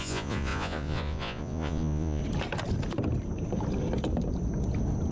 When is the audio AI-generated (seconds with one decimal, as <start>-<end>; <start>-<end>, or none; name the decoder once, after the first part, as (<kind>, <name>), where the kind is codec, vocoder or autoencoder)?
0.0-2.2 (vocoder, Vocos)

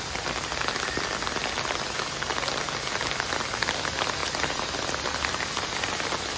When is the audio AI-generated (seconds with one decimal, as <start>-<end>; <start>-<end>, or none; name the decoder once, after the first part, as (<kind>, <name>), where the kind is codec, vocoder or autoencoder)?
none

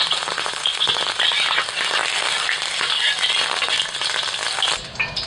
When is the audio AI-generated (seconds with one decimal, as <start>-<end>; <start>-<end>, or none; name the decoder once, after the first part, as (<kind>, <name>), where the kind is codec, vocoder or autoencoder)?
0.0-0.9 (vocoder, Vocos)